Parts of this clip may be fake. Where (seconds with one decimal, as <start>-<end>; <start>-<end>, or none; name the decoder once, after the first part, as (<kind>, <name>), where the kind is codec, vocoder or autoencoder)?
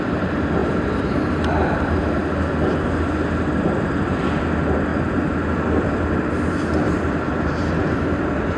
0.0-0.6 (vocoder, BigVGAN v2); 1.3-2.2; 3.5-8.6